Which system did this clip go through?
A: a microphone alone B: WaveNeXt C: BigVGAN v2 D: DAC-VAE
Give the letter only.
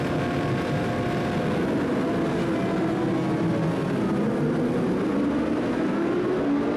A